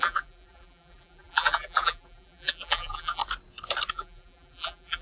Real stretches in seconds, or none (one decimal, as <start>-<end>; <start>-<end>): 3.2-3.9